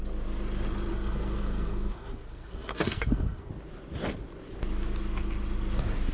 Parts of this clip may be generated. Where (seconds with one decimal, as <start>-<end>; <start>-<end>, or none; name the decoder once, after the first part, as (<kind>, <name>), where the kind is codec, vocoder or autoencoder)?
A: 0.9-3.5 (codec, SNAC)

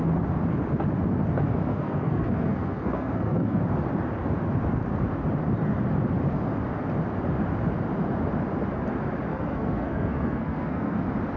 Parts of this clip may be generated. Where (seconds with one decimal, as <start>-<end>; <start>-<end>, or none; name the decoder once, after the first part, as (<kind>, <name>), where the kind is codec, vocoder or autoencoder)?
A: 1.7-3.6 (codec, SNAC); 9.3-11.0

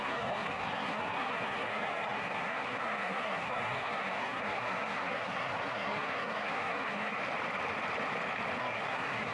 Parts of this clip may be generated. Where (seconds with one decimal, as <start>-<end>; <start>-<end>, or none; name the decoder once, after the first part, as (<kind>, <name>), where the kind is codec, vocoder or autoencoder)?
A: 0.0-7.2 (codec, SNAC); 8.6-9.3

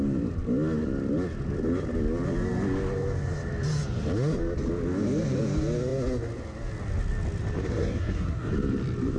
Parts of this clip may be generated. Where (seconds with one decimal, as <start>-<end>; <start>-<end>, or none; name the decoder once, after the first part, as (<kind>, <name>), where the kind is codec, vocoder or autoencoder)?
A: 7.7-8.5 (codec, SNAC)